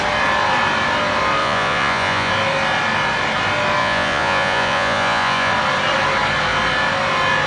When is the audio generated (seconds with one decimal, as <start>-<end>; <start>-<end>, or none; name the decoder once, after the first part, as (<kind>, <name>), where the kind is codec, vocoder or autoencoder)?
1.4-2.3 (vocoder, Vocos); 3.8-5.5